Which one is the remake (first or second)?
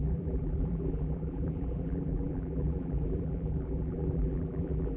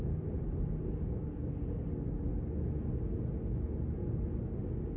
first